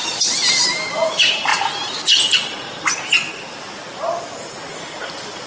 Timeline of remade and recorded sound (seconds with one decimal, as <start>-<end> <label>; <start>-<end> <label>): 0.0-0.9 recorded; 0.9-1.5 remade; 1.5-3.6 recorded; 3.6-5.5 remade